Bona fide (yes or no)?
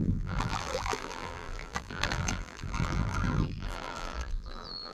no